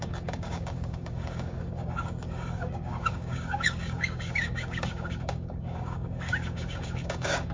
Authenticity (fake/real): fake